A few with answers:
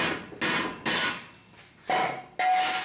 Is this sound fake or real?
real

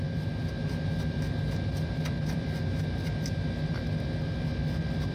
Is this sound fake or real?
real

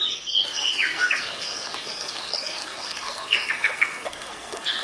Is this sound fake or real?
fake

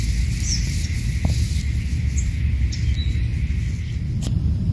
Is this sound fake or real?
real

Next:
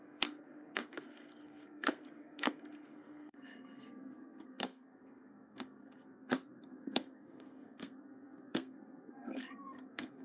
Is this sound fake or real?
fake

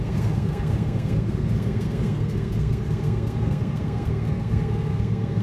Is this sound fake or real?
fake